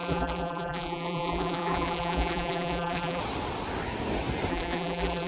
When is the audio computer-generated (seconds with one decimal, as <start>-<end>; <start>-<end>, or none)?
0.0-3.2; 4.5-5.3